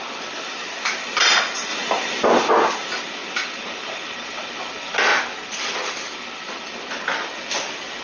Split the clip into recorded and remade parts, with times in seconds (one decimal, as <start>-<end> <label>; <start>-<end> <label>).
0.0-1.7 recorded; 1.7-2.5 remade; 2.5-3.2 recorded; 3.2-4.6 remade; 4.6-8.0 recorded